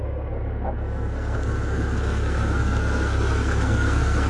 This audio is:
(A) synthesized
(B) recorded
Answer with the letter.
A